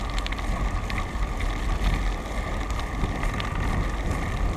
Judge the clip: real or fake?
real